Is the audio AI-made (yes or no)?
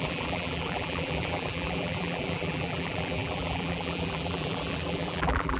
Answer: yes